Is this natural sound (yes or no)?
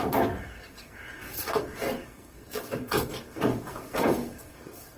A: no